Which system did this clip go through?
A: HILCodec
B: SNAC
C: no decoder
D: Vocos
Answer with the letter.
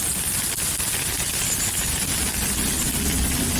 C